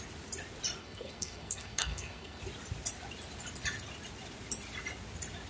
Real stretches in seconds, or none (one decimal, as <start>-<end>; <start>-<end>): 0.0-0.8; 2.4-5.5